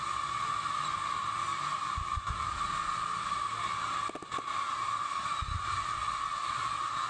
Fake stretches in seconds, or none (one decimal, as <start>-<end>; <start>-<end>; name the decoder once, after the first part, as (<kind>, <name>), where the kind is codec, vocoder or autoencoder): none